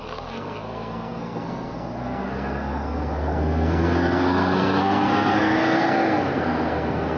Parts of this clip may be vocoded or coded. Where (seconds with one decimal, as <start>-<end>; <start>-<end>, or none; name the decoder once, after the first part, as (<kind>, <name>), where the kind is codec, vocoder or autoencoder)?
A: 0.0-7.2 (codec, SNAC)